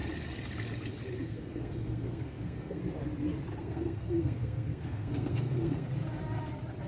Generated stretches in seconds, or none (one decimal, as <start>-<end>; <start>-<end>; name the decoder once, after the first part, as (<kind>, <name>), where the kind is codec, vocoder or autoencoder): 1.2-2.8 (codec, SNAC); 3.6-5.9